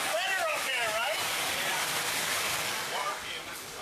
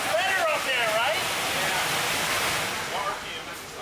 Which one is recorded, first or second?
second